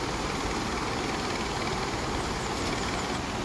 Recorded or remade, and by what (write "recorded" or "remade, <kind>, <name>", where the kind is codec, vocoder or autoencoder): recorded